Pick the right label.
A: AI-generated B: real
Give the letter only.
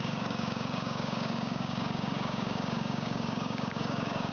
A